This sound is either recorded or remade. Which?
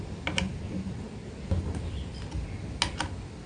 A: recorded